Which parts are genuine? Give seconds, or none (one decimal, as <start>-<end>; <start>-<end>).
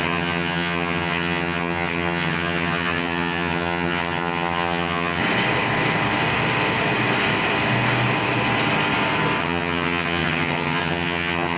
5.2-9.4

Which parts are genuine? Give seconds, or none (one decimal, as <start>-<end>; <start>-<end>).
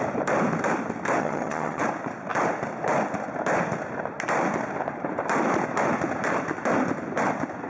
0.0-1.2; 1.8-7.7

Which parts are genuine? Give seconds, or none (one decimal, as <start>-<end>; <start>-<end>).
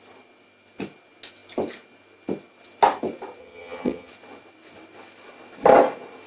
0.0-3.4; 4.1-6.3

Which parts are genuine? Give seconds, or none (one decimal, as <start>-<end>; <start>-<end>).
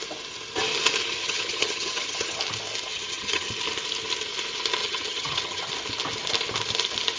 0.0-1.2; 2.4-2.9; 3.5-4.8; 5.7-7.2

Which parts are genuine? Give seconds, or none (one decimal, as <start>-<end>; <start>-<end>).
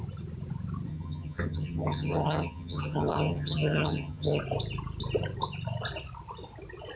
0.0-0.9; 4.4-7.0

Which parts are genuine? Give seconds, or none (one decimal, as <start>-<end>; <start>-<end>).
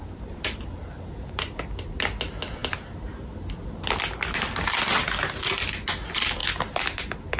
0.0-7.4